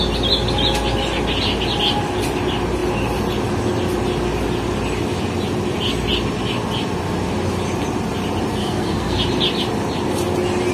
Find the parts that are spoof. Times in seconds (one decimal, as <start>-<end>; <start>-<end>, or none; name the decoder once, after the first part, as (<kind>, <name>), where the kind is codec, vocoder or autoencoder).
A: 8.6-9.2 (codec, SNAC)